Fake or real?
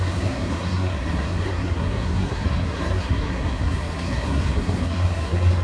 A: fake